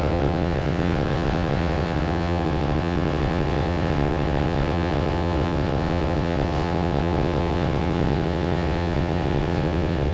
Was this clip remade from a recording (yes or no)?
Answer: yes